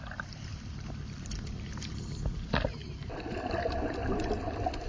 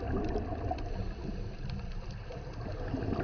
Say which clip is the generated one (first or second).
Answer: first